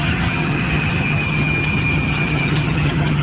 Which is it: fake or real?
fake